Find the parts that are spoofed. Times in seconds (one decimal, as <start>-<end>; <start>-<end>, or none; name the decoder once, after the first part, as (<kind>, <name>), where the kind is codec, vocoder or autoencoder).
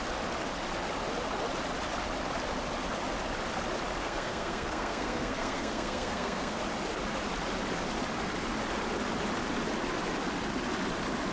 4.0-6.6 (codec, SNAC)